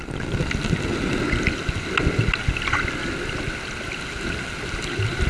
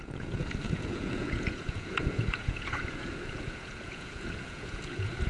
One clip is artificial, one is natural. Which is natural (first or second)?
first